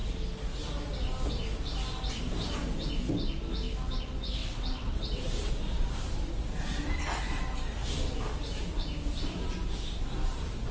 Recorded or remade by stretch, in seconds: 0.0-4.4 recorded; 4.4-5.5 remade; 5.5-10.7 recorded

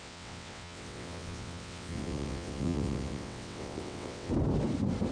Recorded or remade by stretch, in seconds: 0.0-4.3 remade; 4.3-5.1 recorded